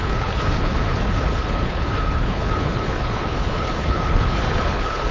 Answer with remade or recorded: remade